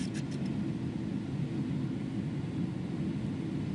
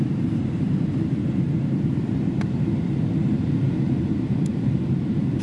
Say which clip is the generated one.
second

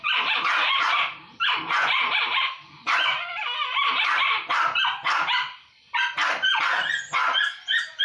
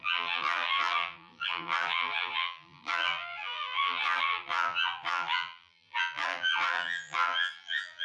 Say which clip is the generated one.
second